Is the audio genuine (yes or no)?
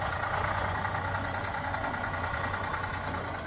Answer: no